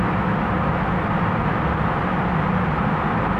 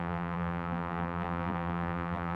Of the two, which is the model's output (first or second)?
second